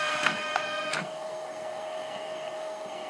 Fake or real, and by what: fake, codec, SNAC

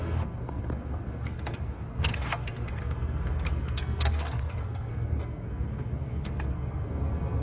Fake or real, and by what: fake, codec, SNAC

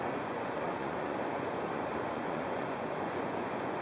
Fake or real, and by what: fake, vocoder, Vocos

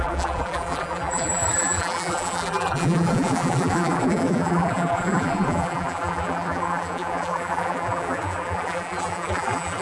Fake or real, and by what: fake, vocoder, BigVGAN v2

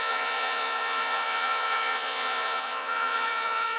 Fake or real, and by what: fake, vocoder, Vocos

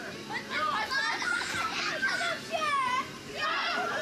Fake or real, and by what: real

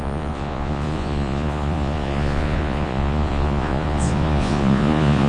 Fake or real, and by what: fake, vocoder, Vocos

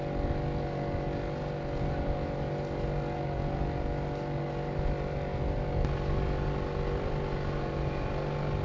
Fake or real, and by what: real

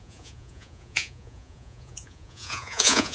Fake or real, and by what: fake, vocoder, Vocos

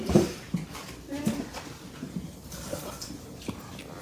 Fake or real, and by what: fake, vocoder, BigVGAN v2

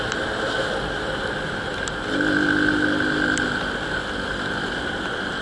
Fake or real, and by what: real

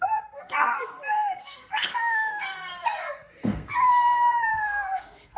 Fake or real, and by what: fake, codec, SNAC